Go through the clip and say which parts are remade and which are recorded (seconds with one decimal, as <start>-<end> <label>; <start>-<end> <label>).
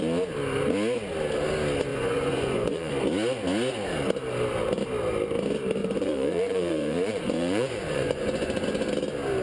0.0-1.9 recorded; 1.9-2.9 remade; 2.9-5.8 recorded; 5.8-8.9 remade; 8.9-9.4 recorded